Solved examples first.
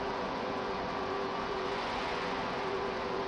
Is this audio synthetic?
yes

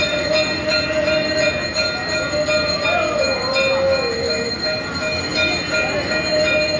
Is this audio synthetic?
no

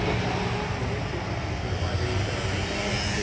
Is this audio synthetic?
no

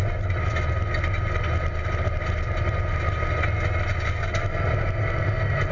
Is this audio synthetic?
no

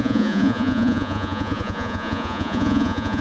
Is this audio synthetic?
yes